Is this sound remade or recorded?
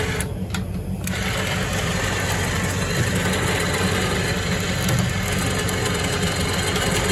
recorded